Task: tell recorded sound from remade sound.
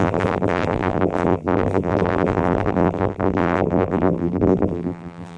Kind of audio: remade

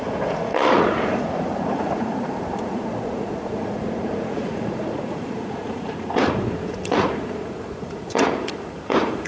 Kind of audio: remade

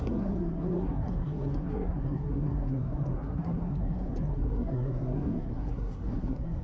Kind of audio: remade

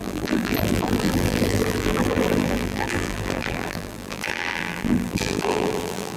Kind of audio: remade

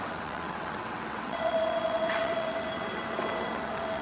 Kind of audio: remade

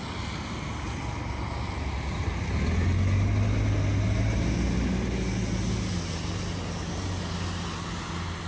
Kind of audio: recorded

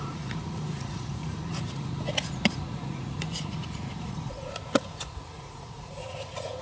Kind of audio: remade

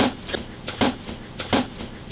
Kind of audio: recorded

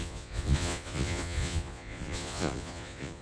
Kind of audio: remade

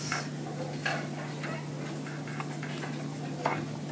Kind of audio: recorded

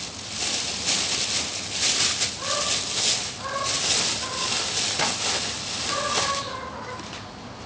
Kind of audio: recorded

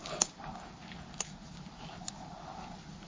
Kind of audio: remade